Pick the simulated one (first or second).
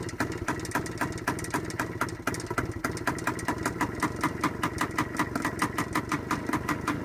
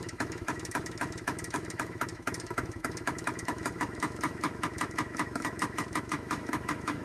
second